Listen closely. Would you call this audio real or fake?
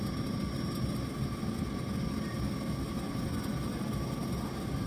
real